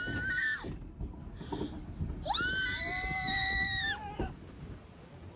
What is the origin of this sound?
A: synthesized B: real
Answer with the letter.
B